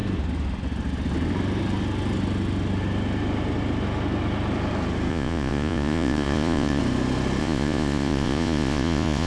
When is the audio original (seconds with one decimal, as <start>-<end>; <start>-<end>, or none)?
0.0-5.1; 6.8-7.4